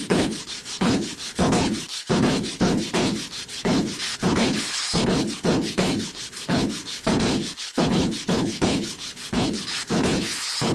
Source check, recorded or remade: remade